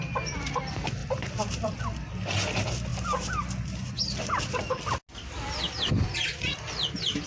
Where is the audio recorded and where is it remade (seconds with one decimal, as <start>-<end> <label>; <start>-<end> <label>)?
0.0-1.0 recorded; 1.0-1.8 remade; 1.8-7.3 recorded